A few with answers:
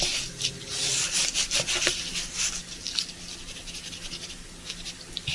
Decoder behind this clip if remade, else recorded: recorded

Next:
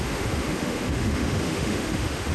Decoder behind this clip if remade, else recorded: remade, autoencoder, DAC-VAE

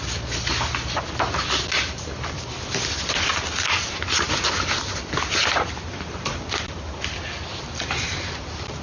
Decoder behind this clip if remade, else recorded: recorded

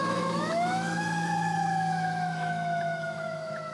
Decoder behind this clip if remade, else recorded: remade, autoencoder, DAC-VAE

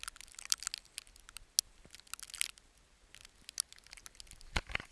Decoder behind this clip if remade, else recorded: recorded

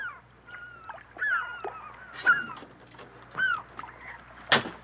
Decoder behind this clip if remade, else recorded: recorded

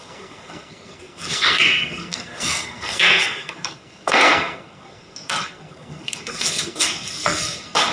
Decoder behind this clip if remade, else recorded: remade, codec, SNAC